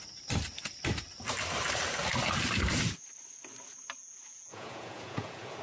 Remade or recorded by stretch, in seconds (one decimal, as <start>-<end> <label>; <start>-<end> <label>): 0.0-4.0 recorded; 4.0-5.6 remade